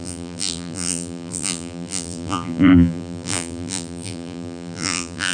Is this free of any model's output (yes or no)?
no